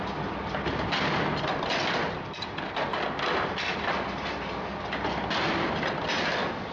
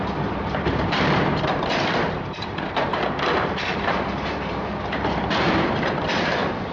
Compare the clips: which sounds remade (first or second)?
second